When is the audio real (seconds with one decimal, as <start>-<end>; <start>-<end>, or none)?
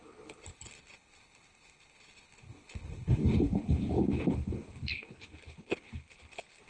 none